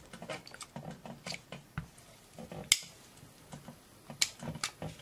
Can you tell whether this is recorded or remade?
recorded